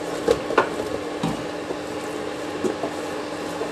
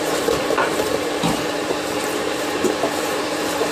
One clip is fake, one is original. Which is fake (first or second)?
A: second